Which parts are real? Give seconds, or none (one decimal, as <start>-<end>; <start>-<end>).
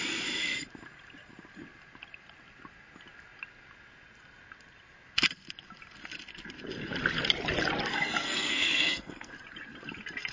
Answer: 0.0-8.2; 9.3-10.3